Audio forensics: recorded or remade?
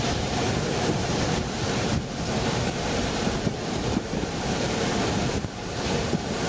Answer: remade